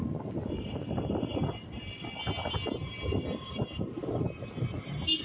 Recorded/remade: recorded